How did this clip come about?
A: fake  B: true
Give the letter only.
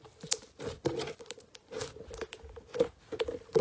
B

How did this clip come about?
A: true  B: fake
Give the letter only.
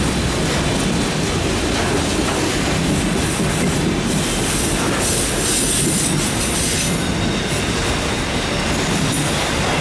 A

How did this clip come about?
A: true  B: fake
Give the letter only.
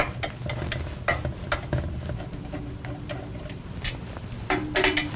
A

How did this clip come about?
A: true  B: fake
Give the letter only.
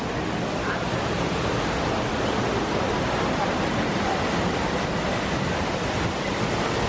A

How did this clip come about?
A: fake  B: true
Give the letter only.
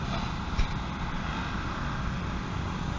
B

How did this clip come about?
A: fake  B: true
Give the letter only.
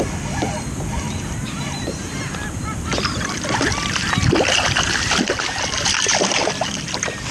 A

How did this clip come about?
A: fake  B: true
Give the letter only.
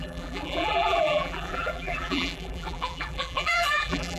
A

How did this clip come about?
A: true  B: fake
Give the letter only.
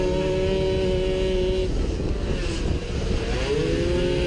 A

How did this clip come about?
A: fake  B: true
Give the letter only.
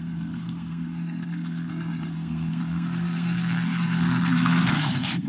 A